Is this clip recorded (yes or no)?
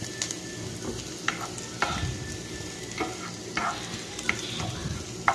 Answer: yes